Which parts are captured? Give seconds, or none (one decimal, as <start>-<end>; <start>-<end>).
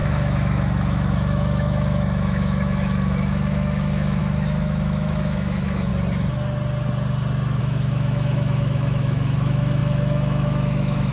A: 5.9-7.6